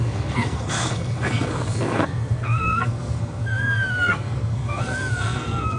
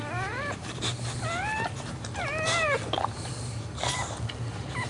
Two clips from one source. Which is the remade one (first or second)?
first